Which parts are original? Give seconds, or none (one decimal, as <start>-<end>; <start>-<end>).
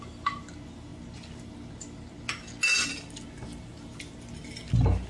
0.0-5.1